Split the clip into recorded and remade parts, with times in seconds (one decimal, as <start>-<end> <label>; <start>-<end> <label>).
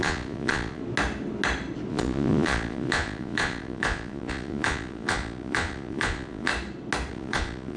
0.0-0.8 remade; 0.8-1.9 recorded; 1.9-6.5 remade; 6.5-7.1 recorded; 7.1-7.8 remade